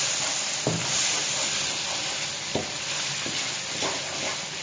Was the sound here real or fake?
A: real